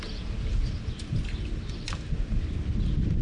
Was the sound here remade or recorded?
recorded